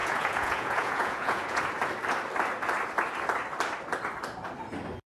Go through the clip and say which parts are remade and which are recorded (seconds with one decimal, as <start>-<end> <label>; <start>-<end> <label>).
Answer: 0.0-1.6 remade; 1.6-5.1 recorded